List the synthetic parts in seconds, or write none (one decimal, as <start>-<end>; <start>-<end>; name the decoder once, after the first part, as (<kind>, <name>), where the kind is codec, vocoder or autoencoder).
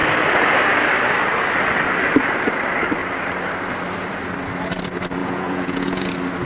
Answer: 5.2-6.1 (vocoder, Vocos)